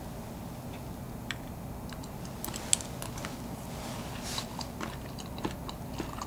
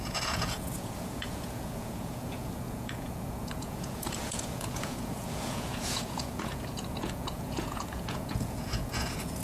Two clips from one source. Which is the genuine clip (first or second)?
first